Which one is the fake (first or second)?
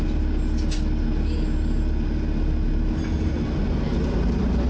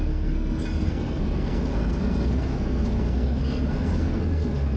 second